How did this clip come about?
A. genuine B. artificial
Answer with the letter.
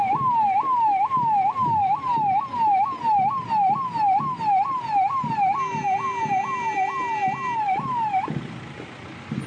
A